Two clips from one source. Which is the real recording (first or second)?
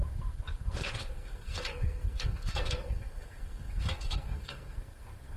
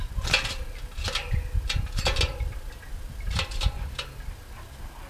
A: second